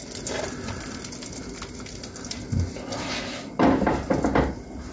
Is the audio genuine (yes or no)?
yes